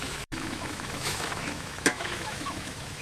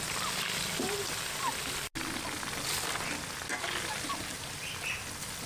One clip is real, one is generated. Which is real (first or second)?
second